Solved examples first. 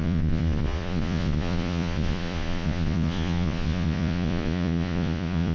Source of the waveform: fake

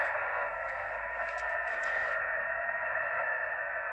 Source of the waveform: fake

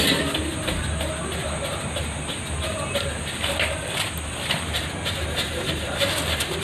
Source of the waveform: real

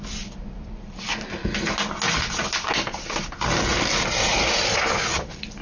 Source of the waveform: real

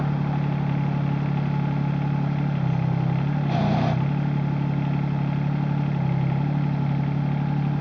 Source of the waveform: real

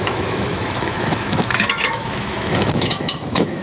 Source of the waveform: fake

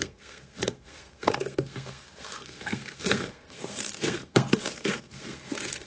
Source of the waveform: fake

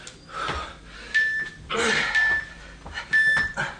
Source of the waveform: real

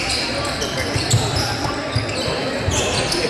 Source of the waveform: fake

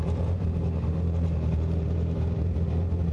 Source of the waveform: real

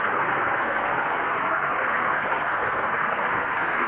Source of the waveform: fake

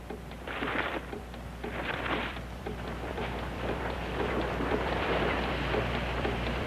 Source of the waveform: fake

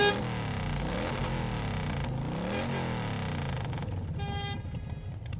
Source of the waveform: real